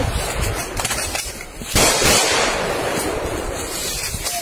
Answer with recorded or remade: recorded